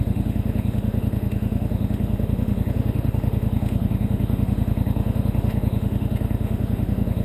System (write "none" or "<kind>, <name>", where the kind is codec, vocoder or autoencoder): autoencoder, DAC-VAE